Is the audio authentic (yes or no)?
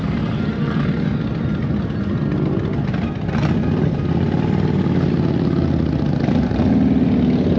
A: yes